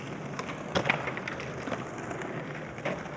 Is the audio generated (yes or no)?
no